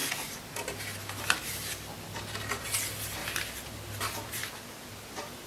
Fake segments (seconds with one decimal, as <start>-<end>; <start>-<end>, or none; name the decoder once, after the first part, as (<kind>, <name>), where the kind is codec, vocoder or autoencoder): 3.2-4.0 (vocoder, BigVGAN v2); 4.4-5.5